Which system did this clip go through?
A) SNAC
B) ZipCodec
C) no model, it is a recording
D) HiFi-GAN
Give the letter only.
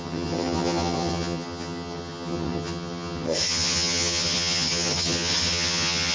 D